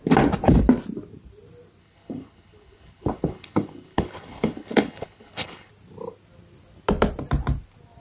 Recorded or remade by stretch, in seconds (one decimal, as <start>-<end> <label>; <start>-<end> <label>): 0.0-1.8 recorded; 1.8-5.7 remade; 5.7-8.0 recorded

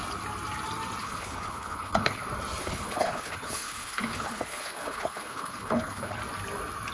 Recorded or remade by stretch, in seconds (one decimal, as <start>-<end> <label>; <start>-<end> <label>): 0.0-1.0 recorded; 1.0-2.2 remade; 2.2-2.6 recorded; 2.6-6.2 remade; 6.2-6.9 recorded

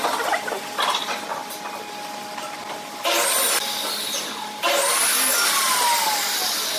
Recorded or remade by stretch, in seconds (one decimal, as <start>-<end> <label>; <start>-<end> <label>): 0.0-6.8 recorded

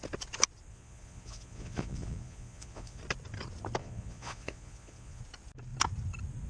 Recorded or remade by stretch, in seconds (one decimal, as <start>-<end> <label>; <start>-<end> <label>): 0.0-0.7 recorded; 0.7-3.0 remade; 3.0-3.8 recorded; 3.8-5.2 remade; 5.2-6.5 recorded

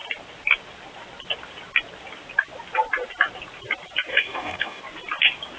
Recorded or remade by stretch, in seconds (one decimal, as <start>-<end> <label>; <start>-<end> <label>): 0.0-4.1 recorded; 4.1-4.8 remade; 4.8-5.6 recorded

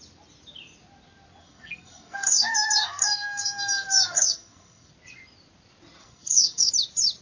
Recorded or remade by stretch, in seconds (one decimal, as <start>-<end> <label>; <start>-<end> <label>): 0.0-1.4 recorded; 1.4-4.9 remade; 4.9-6.0 recorded; 6.0-6.7 remade; 6.7-7.2 recorded

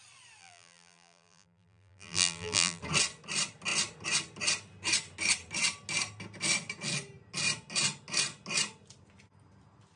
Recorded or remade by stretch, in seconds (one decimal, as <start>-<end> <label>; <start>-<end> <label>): 0.0-0.4 recorded; 0.4-2.8 remade; 2.8-10.0 recorded

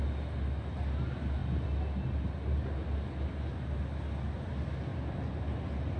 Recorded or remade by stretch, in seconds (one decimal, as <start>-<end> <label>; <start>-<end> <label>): 0.0-6.0 recorded